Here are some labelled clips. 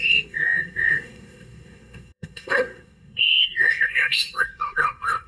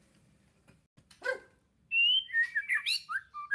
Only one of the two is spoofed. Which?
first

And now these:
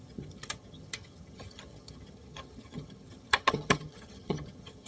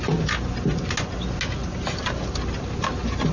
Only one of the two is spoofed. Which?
first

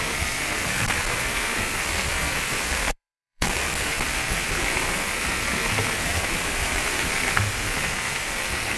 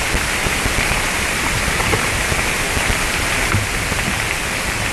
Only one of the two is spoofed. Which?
first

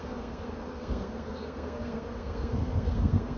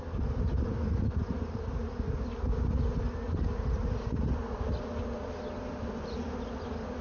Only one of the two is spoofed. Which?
first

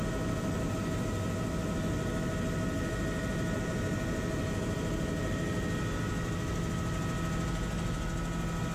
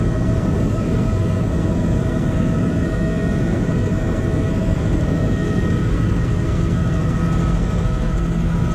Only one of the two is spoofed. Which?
second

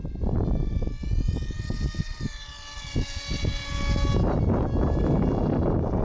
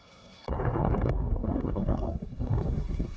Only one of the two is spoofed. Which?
second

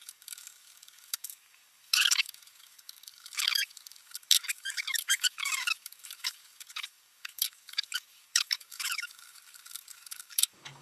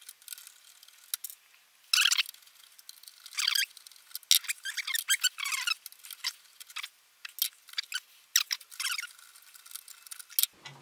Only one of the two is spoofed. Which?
first